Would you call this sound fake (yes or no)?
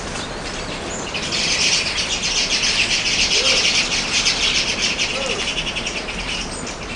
no